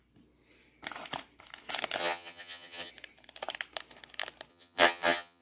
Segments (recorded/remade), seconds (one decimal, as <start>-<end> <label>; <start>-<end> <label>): 0.0-2.0 recorded; 2.0-2.9 remade; 2.9-4.5 recorded; 4.5-5.4 remade